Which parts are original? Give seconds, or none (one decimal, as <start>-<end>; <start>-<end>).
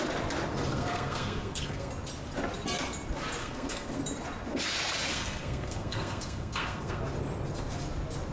0.0-0.7; 1.9-3.4; 4.0-5.1; 7.0-8.3